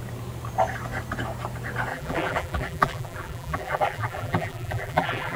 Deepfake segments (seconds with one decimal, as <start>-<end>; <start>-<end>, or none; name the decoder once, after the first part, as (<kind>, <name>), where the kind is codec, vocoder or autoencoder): 1.9-5.4 (vocoder, BigVGAN v2)